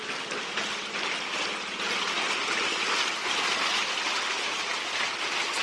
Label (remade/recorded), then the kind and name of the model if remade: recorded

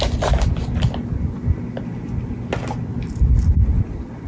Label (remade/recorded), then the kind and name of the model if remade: recorded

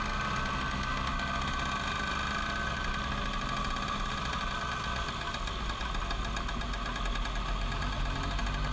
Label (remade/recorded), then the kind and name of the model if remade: recorded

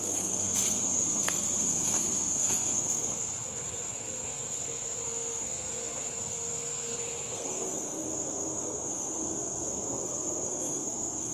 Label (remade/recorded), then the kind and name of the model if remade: remade, codec, SNAC